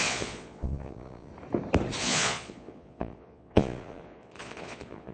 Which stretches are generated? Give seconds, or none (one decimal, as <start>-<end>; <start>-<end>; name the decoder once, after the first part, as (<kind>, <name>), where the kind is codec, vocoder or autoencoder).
0.0-1.3 (vocoder, Vocos); 2.0-5.1

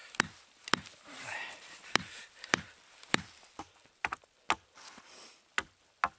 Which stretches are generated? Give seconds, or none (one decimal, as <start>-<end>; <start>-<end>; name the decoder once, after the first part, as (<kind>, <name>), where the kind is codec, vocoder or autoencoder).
0.0-2.2 (vocoder, BigVGAN v2)

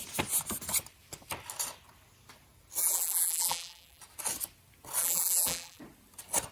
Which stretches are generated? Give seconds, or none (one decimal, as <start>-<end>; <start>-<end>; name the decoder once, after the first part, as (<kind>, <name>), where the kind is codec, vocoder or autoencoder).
2.8-4.0 (vocoder, BigVGAN v2); 5.0-5.8

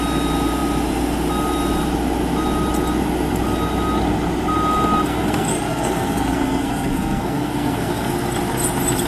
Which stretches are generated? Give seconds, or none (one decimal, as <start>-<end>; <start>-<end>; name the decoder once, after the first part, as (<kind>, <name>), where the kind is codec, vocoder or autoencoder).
5.1-8.1 (codec, SNAC)

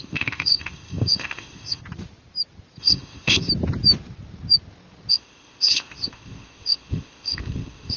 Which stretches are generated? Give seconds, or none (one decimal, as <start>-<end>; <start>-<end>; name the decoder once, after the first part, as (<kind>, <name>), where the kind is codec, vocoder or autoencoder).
0.0-1.8 (codec, ZipCodec); 2.8-3.5; 5.1-8.0

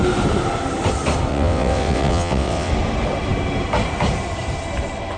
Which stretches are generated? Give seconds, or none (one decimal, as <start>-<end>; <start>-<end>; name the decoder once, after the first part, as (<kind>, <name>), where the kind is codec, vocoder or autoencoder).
1.3-2.7 (vocoder, WaveNeXt)

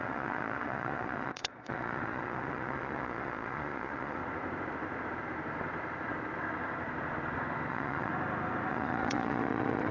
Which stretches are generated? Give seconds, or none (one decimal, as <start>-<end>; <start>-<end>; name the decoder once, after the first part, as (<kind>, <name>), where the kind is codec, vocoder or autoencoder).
0.0-4.2 (vocoder, Vocos); 7.7-8.1; 8.7-9.9